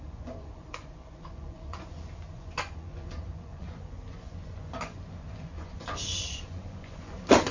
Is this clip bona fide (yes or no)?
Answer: no